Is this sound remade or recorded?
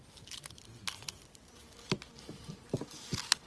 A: recorded